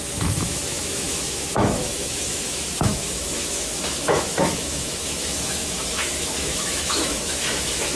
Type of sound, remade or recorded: remade